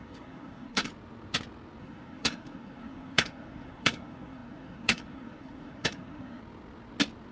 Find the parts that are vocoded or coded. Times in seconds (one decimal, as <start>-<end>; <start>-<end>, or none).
0.0-0.9; 1.8-6.4